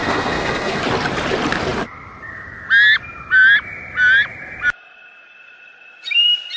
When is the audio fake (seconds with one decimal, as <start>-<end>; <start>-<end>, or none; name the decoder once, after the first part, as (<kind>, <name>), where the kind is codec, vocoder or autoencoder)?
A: 0.0-0.8 (codec, SNAC)

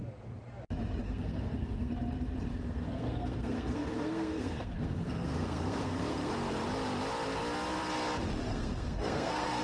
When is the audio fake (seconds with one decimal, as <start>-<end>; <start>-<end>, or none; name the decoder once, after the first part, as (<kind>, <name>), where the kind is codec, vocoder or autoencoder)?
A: 1.0-1.9 (codec, SNAC); 2.5-6.3; 8.5-9.6

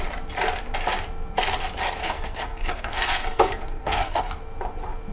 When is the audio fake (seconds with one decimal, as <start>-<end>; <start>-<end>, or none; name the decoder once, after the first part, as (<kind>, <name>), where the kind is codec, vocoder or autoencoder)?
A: 2.0-4.2 (codec, SNAC)

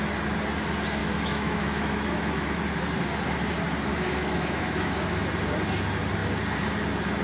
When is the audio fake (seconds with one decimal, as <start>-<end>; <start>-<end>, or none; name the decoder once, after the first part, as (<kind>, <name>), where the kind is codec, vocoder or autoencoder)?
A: 1.0-2.6 (autoencoder, DAC-VAE); 3.9-5.3

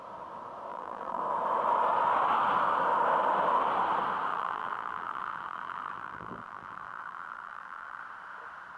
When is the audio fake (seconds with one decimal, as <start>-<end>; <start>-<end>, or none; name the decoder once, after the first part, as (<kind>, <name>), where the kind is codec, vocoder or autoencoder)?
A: 0.7-1.2 (vocoder, BigVGAN v2); 4.3-8.0

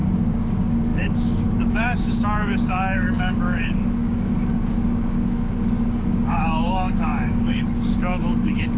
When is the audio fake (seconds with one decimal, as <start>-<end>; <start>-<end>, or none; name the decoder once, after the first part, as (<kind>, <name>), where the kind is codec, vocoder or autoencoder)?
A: 0.0-8.8 (codec, DAC)

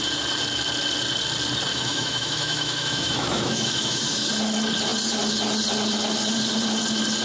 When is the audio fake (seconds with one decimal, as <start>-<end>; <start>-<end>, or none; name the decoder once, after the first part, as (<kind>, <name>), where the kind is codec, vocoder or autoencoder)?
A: 1.7-4.3 (autoencoder, DAC-VAE)